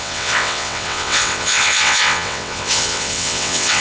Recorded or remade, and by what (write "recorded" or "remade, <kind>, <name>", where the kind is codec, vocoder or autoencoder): remade, vocoder, WaveNeXt